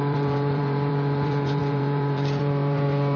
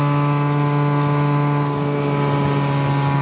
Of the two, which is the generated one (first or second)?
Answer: first